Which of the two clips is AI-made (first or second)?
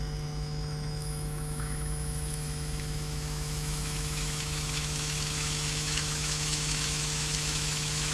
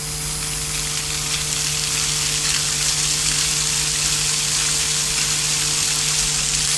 first